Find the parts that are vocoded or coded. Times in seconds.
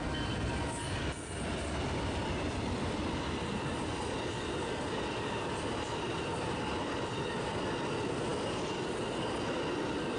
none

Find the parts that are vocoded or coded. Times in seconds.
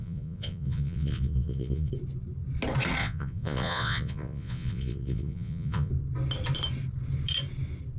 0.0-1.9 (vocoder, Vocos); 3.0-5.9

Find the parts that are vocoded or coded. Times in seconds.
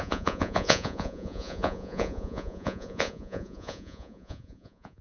0.0-5.0 (vocoder, Vocos)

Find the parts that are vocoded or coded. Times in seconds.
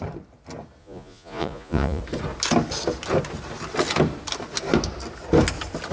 0.8-2.0 (vocoder, Vocos)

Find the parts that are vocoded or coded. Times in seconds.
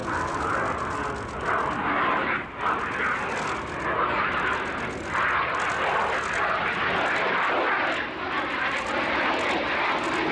none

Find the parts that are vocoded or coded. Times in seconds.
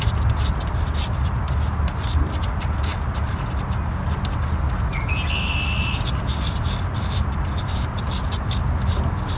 none